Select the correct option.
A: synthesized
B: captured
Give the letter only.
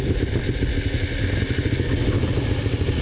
B